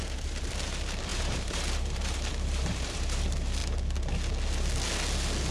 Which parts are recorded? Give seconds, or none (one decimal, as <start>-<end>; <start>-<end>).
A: 3.6-5.5